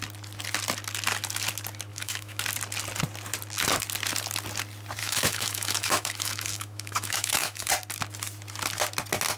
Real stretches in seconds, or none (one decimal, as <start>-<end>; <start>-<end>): 0.0-1.9; 2.4-5.0; 7.7-9.4